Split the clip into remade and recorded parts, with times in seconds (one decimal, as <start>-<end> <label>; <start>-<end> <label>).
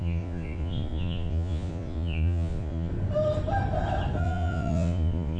0.0-2.9 remade; 2.9-4.2 recorded; 4.2-5.4 remade